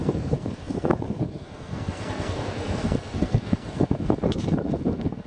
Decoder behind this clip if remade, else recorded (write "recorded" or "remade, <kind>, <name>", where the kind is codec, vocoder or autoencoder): remade, codec, SNAC